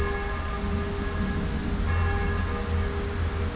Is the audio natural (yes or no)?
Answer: yes